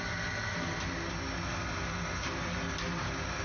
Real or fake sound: real